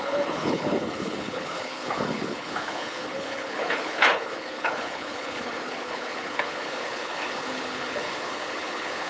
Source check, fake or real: fake